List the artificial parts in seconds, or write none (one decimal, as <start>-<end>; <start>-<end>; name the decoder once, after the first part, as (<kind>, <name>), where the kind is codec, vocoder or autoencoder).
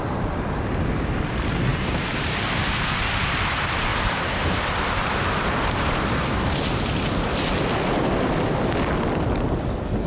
1.7-2.6 (vocoder, BigVGAN v2); 3.9-7.1